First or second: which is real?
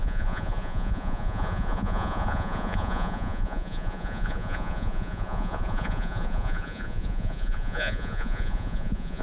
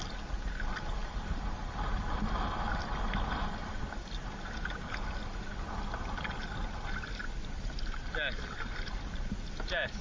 second